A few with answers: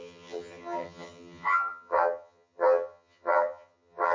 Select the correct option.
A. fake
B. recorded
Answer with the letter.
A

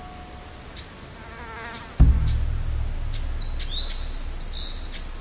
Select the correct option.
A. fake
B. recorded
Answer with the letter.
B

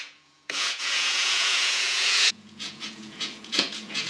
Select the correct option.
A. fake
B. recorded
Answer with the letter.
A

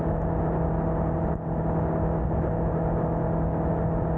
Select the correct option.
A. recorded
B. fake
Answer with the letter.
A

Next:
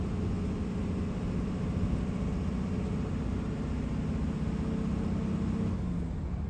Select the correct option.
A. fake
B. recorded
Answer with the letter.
B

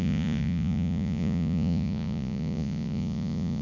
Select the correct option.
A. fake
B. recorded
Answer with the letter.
A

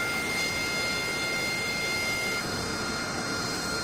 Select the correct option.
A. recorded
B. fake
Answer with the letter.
A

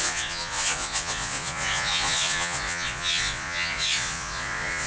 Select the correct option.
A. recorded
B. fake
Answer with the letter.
B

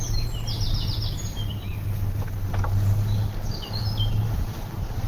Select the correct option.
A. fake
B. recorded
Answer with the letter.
B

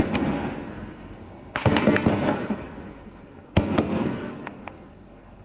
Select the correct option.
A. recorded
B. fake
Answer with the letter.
B